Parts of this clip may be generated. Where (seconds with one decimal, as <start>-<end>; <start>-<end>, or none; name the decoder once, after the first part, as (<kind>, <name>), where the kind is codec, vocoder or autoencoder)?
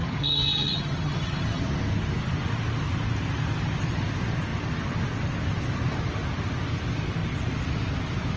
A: 0.0-1.6 (vocoder, HiFi-GAN)